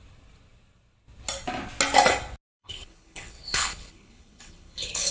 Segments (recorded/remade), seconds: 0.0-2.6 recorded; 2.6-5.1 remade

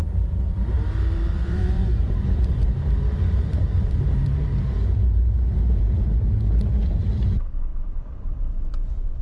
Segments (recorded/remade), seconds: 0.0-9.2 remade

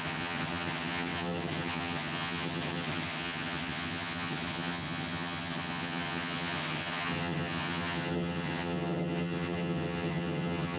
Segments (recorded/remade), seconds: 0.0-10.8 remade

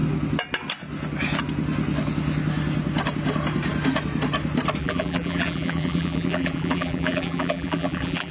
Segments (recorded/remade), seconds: 0.0-4.8 recorded; 4.8-8.3 remade

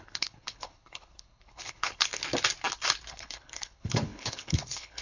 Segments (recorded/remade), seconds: 0.0-2.2 remade; 2.2-3.1 recorded; 3.1-5.0 remade

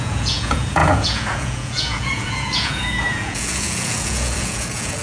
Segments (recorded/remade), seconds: 0.0-5.0 remade

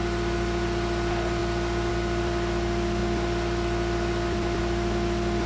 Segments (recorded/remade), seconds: 0.0-5.5 recorded